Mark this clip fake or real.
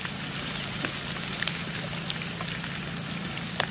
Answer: real